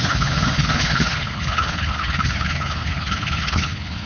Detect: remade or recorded remade